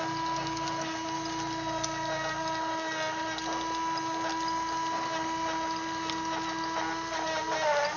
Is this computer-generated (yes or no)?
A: no